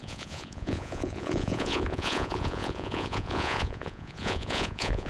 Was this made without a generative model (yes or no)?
no